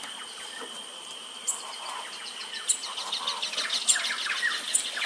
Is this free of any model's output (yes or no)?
yes